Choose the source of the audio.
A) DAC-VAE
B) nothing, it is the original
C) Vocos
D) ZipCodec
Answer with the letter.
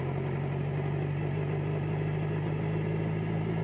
B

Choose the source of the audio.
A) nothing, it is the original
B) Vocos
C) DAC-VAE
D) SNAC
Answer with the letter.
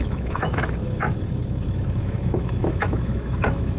C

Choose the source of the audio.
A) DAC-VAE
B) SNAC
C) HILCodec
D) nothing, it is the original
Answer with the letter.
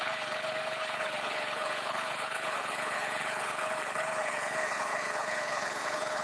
C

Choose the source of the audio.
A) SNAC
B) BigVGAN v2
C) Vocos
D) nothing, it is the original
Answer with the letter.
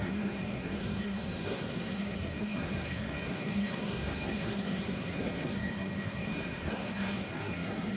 A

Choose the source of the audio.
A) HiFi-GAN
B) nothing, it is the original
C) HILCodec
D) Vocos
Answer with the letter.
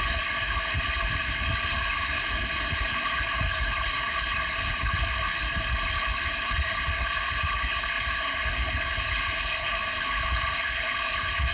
C